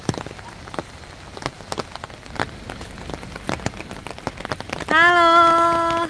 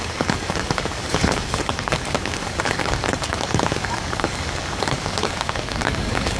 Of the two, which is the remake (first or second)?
second